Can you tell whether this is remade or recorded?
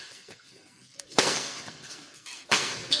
remade